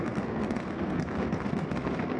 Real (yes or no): no